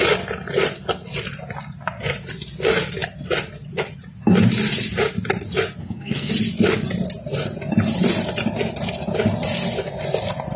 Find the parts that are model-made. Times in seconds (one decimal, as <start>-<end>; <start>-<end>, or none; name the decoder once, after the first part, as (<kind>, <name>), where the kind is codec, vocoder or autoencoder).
5.8-6.3 (codec, SNAC)